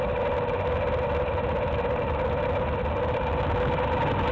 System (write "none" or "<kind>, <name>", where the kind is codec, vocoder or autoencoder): none